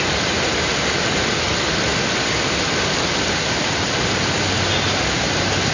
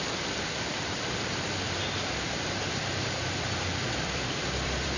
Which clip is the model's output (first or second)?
second